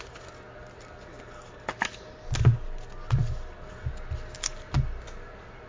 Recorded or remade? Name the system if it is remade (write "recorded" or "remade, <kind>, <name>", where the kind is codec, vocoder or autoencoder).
recorded